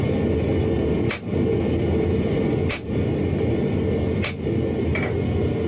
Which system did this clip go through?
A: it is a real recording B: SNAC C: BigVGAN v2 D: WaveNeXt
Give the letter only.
A